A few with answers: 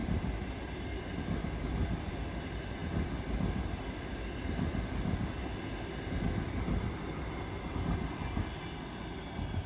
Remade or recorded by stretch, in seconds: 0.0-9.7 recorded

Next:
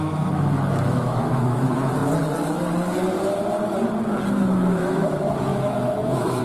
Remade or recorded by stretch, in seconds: 0.0-2.0 remade; 2.0-4.3 recorded; 4.3-6.4 remade

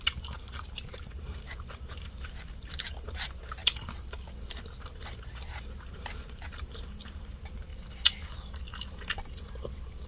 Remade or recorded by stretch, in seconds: 0.0-3.6 remade; 3.6-4.8 recorded; 4.8-7.7 remade; 7.7-10.1 recorded

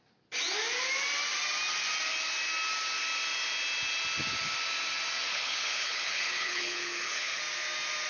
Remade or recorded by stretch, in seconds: 0.0-5.3 recorded; 5.3-7.4 remade; 7.4-8.1 recorded